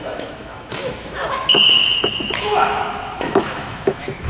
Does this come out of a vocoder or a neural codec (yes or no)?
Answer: yes